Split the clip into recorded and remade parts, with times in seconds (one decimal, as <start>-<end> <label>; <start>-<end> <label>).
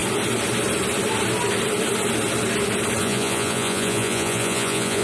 0.0-3.0 recorded; 3.0-5.0 remade